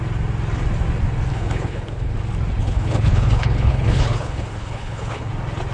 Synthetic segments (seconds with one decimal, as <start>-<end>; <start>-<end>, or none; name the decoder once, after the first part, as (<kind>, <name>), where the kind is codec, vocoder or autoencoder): 1.3-2.1 (codec, HILCodec); 2.6-5.3

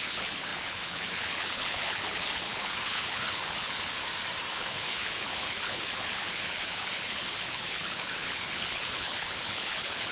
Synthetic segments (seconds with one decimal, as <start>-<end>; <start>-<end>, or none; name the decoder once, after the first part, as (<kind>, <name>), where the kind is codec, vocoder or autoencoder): 0.0-4.0 (codec, HILCodec); 4.5-10.1

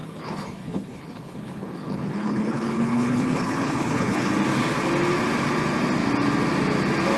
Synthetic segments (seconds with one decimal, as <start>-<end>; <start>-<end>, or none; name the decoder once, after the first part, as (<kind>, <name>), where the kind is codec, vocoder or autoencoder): 0.0-4.3 (codec, HILCodec)

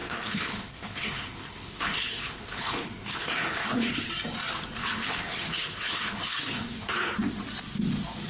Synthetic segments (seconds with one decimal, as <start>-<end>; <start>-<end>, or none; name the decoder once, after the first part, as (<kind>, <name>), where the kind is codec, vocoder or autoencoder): 0.0-4.1 (codec, HILCodec); 4.8-7.1

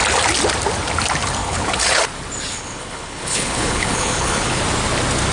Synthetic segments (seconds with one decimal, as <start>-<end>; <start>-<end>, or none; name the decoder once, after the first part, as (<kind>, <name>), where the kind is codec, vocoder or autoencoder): 1.4-2.0 (codec, HILCodec); 2.5-4.6

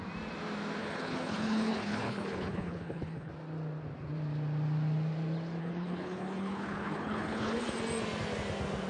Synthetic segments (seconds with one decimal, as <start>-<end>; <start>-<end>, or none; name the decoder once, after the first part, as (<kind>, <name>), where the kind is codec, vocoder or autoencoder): 0.8-3.3 (codec, HILCodec); 5.6-7.6

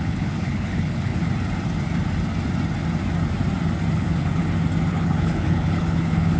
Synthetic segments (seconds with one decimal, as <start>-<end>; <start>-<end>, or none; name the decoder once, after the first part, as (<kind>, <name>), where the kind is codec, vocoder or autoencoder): 0.0-1.1 (codec, HILCodec); 3.9-4.4; 4.9-6.4

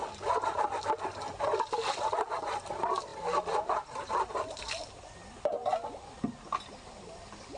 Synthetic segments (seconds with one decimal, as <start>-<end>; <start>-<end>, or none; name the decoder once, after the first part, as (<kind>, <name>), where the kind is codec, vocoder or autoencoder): none